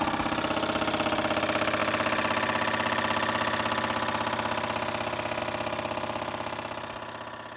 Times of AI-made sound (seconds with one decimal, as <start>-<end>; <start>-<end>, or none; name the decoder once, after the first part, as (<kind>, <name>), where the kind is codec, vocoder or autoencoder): none